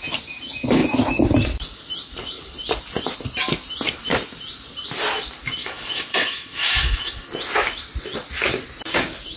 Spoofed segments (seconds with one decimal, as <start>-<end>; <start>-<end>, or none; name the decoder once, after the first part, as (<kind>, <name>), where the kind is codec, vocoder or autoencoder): 5.6-7.3 (autoencoder, DAC-VAE)